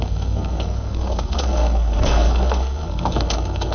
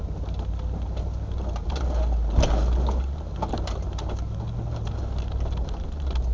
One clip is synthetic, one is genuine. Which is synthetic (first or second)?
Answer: first